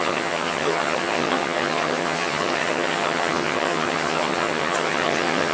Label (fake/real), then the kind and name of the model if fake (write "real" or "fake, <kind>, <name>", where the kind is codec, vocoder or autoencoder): fake, vocoder, HiFi-GAN